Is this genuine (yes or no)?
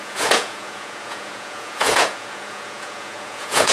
no